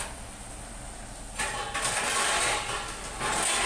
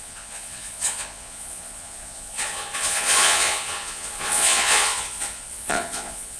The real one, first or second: first